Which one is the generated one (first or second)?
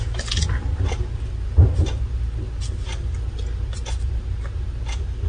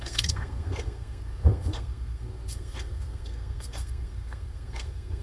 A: second